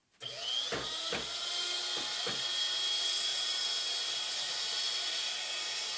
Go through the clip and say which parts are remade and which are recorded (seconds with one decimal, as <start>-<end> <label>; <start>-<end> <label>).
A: 0.0-6.0 recorded

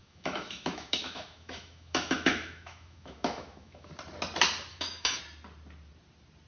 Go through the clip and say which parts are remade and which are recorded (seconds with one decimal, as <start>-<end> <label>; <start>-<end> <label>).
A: 0.0-3.9 remade; 3.9-4.7 recorded; 4.7-5.2 remade; 5.2-6.5 recorded

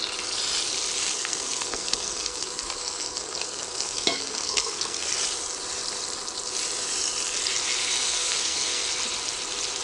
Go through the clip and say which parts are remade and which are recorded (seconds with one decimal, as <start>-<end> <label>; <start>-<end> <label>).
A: 0.0-1.1 recorded; 1.1-5.1 remade; 5.1-7.8 recorded; 7.8-8.9 remade; 8.9-9.8 recorded